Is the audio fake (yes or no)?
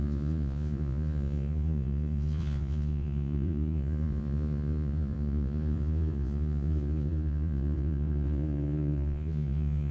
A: yes